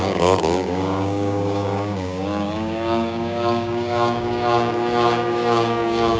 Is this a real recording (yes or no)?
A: no